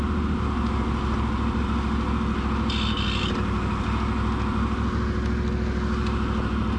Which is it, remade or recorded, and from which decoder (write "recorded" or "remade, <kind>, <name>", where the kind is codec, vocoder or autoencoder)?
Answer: recorded